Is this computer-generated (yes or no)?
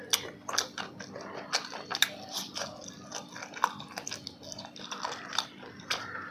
no